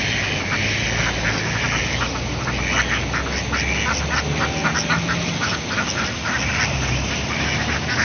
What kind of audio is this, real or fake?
real